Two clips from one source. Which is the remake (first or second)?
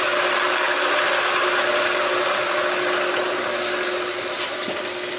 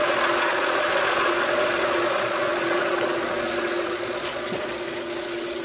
second